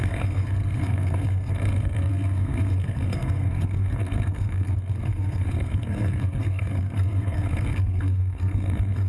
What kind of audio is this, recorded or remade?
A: remade